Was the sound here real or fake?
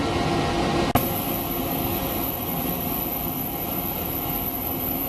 real